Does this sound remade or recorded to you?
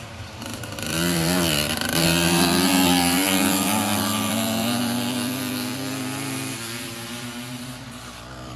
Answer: remade